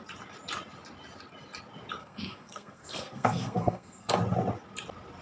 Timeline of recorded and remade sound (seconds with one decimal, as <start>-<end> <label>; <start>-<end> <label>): 0.0-2.0 recorded; 2.0-4.1 remade; 4.1-5.2 recorded